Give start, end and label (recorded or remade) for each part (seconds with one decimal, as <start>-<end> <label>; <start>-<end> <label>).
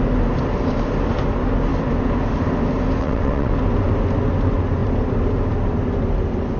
0.0-3.0 recorded; 3.0-3.5 remade; 3.5-6.6 recorded